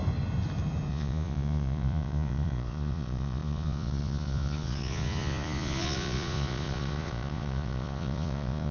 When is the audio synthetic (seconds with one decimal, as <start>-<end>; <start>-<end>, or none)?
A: 0.9-8.7